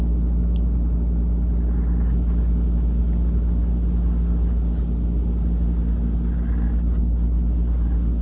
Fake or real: real